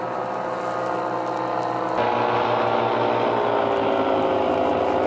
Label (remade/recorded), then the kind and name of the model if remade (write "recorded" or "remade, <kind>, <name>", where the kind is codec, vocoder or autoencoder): recorded